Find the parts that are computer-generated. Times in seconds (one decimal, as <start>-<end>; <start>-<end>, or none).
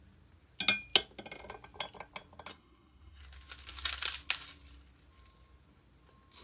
2.5-3.2